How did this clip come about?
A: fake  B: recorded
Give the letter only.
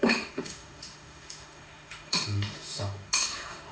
A